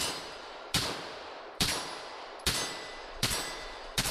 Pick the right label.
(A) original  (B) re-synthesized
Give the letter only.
B